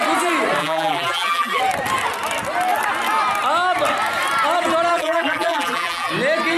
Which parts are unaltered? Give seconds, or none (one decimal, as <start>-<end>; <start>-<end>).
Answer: 0.0-0.6; 1.6-4.9; 6.1-6.6